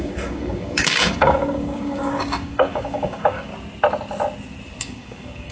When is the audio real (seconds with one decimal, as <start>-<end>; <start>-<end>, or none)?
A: 3.5-4.8